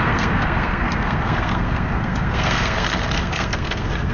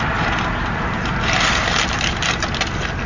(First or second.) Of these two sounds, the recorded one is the second